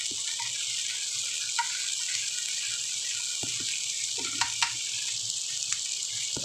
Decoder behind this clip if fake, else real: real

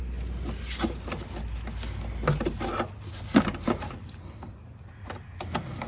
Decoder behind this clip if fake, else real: real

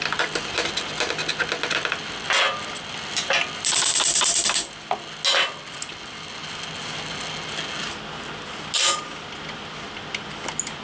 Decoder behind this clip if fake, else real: real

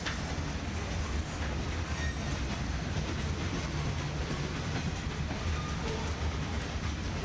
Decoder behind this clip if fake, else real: real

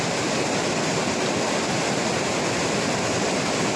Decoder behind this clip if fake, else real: real